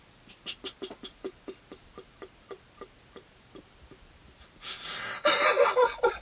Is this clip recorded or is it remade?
recorded